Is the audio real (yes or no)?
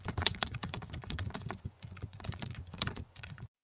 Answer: no